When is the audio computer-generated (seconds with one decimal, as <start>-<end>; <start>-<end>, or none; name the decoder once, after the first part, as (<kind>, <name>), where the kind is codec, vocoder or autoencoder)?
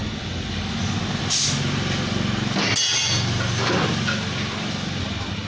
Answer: none